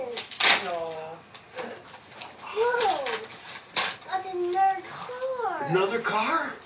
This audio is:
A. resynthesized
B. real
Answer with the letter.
B